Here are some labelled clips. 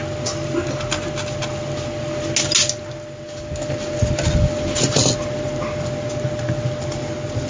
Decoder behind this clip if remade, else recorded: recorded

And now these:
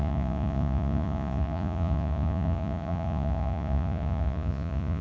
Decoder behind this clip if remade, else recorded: remade, vocoder, Vocos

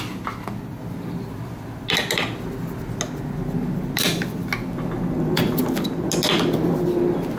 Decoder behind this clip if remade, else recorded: recorded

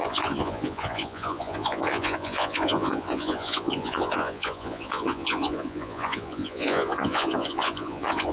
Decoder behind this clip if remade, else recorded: remade, vocoder, Vocos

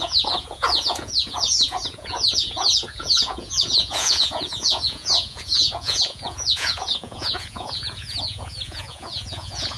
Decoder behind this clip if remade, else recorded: remade, vocoder, Vocos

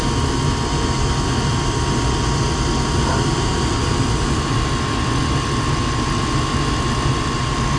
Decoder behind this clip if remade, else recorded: recorded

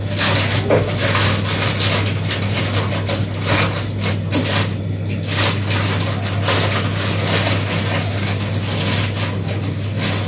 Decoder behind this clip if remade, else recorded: recorded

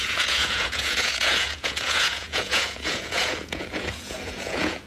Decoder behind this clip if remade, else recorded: remade, vocoder, Vocos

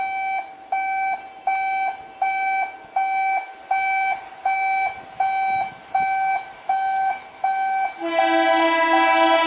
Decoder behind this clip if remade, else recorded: recorded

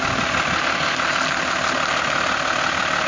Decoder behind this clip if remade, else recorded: recorded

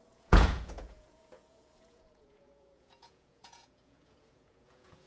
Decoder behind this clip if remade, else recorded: remade, vocoder, Vocos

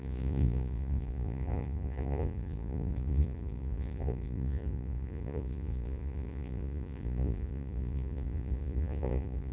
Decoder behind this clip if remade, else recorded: remade, vocoder, Vocos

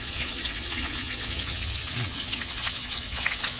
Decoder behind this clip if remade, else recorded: remade, vocoder, Vocos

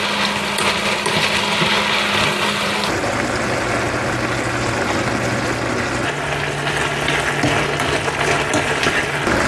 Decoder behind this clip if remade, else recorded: recorded